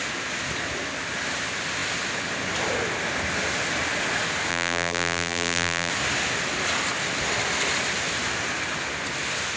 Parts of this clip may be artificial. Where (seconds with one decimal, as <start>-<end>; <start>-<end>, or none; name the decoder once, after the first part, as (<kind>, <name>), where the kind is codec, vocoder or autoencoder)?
4.5-5.9 (vocoder, BigVGAN v2)

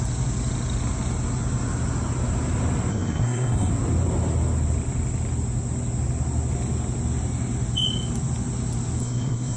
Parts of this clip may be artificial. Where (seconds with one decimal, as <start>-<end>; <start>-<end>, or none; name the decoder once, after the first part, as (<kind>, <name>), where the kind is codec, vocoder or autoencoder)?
2.9-3.7 (codec, SNAC); 9.0-9.6

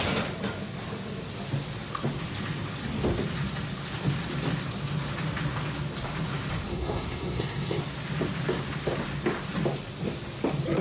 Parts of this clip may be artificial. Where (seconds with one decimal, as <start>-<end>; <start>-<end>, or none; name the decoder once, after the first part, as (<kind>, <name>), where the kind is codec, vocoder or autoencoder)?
6.7-7.8 (codec, SNAC)

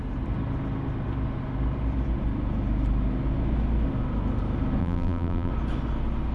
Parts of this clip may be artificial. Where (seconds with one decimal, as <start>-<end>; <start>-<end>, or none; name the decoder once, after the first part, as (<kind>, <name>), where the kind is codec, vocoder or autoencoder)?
4.8-5.5 (vocoder, BigVGAN v2)

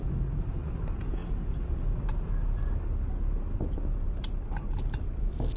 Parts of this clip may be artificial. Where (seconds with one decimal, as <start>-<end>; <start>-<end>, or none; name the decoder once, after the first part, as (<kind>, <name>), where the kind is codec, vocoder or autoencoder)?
0.7-1.2 (vocoder, BigVGAN v2); 3.4-5.6

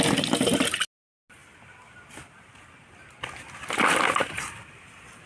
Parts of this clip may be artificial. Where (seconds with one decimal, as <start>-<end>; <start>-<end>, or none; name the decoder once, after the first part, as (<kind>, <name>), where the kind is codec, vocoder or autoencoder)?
none

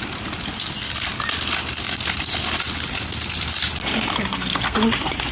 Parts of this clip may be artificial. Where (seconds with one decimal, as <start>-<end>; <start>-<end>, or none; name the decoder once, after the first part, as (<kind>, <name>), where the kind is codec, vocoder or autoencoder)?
4.3-4.8 (codec, SNAC)

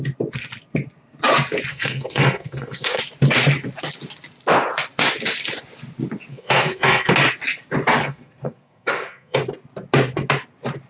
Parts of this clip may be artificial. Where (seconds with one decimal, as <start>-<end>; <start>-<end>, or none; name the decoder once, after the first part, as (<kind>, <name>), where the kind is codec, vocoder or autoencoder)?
1.7-3.0 (codec, SNAC); 6.3-7.1; 8.0-9.4